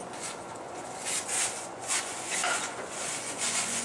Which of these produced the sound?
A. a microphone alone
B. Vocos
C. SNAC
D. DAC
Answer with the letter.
B